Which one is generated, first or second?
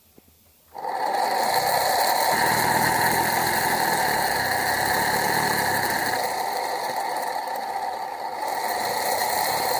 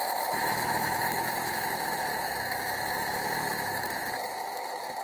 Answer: second